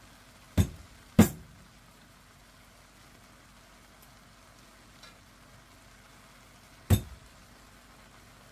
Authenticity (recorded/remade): recorded